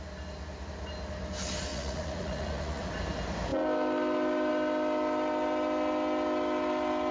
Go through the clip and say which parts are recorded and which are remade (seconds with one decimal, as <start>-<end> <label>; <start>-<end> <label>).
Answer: 0.0-1.7 recorded; 1.7-2.9 remade; 2.9-7.1 recorded